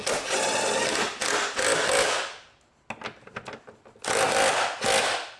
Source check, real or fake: real